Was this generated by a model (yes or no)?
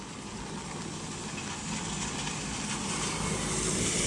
no